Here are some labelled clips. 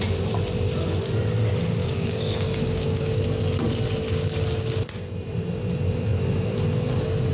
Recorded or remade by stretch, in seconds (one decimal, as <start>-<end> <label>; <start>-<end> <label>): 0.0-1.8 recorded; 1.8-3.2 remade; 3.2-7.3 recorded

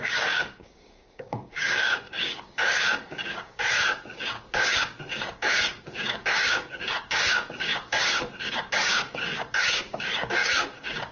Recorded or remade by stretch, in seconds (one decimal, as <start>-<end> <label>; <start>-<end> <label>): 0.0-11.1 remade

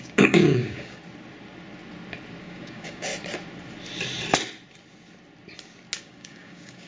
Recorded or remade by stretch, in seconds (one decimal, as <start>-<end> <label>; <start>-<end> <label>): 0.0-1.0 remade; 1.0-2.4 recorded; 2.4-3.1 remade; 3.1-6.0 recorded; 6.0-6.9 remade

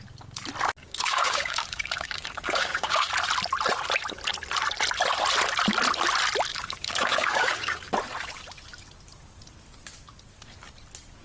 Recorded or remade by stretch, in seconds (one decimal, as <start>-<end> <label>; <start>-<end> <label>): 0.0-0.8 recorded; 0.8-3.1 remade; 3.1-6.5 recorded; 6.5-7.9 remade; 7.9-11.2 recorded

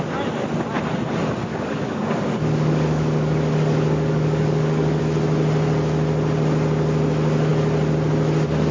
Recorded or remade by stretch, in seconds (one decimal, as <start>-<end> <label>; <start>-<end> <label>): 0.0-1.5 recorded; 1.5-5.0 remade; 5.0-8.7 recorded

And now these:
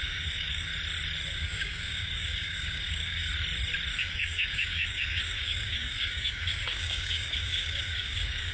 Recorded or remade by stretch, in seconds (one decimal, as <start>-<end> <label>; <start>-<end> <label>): 0.0-0.7 remade; 0.7-1.3 recorded; 1.3-3.3 remade; 3.3-4.0 recorded; 4.0-8.5 remade

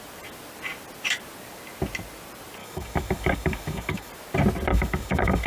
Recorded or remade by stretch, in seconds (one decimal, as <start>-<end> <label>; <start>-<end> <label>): 0.0-2.6 recorded; 2.6-4.1 remade; 4.1-4.7 recorded; 4.7-5.5 remade

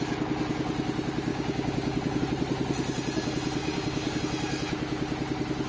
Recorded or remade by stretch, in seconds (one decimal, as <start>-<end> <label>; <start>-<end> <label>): 0.0-1.3 recorded; 1.3-2.2 remade; 2.2-3.6 recorded; 3.6-4.2 remade; 4.2-5.7 recorded